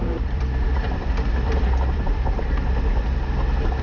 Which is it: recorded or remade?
remade